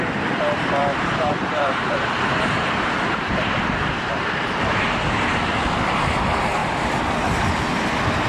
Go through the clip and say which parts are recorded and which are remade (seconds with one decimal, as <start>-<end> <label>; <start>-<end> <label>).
0.0-0.8 recorded; 0.8-5.1 remade; 5.1-8.3 recorded